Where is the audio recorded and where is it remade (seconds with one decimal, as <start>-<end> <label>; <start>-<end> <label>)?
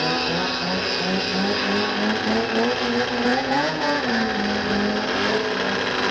0.0-3.3 recorded; 3.3-4.0 remade; 4.0-6.1 recorded